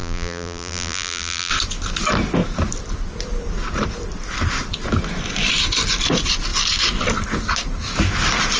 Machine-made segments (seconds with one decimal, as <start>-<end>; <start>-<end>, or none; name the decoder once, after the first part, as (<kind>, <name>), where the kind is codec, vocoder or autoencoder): 0.0-1.5 (vocoder, BigVGAN v2)